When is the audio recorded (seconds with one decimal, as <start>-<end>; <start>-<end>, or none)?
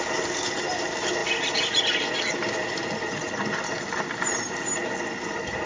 0.0-5.7